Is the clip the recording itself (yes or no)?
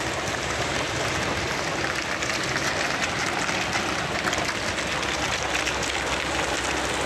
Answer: yes